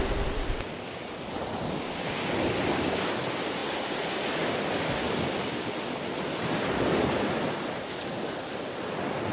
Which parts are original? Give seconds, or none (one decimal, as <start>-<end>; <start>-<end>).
0.0-9.3